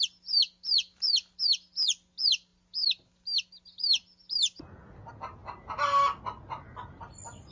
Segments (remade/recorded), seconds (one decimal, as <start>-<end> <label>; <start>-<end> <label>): 0.0-7.5 recorded